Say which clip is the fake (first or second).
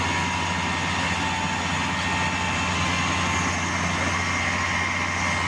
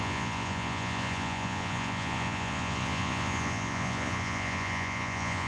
second